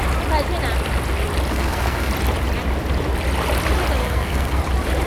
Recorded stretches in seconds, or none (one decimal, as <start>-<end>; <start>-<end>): 0.0-1.5; 2.1-4.0; 4.6-5.1